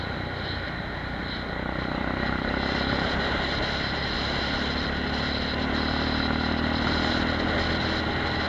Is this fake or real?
real